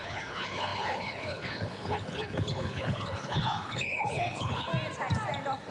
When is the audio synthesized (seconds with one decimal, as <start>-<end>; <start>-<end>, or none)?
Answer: 0.0-4.7